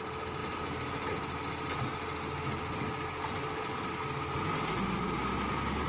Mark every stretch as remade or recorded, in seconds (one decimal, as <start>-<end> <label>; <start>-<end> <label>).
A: 0.0-5.9 recorded